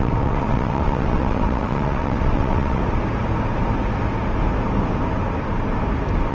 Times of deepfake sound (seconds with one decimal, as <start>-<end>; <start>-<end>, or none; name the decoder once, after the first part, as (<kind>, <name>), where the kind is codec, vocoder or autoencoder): 0.0-2.8 (vocoder, WaveNeXt)